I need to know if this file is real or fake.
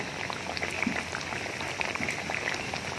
real